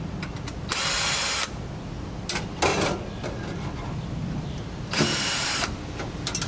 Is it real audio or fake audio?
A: real